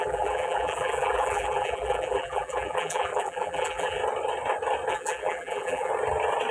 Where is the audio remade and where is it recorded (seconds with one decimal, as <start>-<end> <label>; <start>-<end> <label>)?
0.0-4.0 remade; 4.0-4.9 recorded; 4.9-5.9 remade; 5.9-6.5 recorded